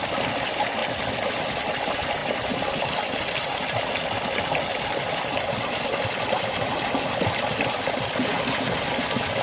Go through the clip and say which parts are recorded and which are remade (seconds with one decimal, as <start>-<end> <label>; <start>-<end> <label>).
0.0-0.8 remade; 0.8-1.3 recorded; 1.3-2.2 remade; 2.2-2.8 recorded; 2.8-9.4 remade